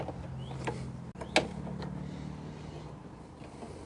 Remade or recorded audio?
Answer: recorded